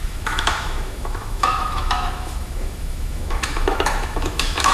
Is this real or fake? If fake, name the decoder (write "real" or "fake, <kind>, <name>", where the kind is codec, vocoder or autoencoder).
fake, autoencoder, DAC-VAE